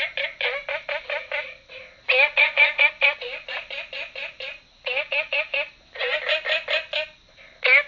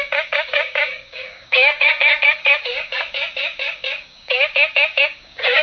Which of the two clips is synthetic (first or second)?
second